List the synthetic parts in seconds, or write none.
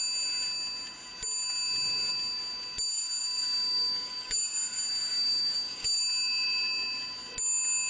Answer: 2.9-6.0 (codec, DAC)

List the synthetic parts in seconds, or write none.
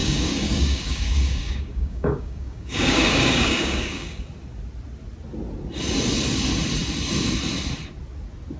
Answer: 0.0-4.2 (codec, DAC)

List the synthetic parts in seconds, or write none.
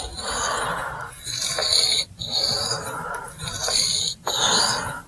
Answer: none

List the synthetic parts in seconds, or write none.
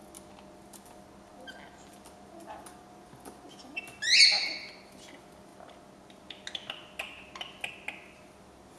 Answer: none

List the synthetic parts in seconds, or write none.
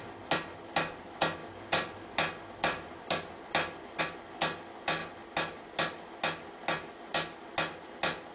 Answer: none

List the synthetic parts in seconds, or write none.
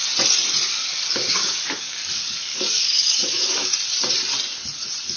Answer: 0.7-3.7 (codec, DAC)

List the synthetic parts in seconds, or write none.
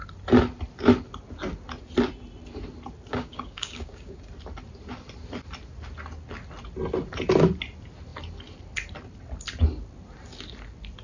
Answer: 3.1-4.2 (codec, DAC)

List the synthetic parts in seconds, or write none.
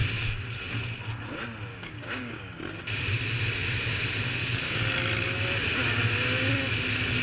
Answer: 1.7-2.4 (codec, DAC); 4.4-4.9